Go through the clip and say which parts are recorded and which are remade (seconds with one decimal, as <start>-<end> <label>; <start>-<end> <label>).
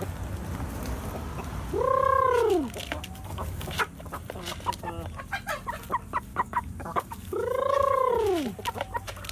0.0-2.0 recorded; 2.0-2.5 remade; 2.5-3.3 recorded; 3.3-3.8 remade; 3.8-6.3 recorded; 6.3-8.1 remade; 8.1-9.3 recorded